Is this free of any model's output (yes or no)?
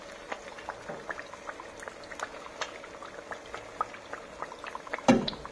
yes